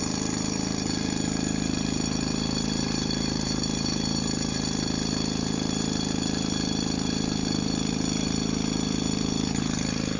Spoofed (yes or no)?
no